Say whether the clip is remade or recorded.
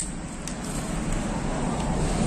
recorded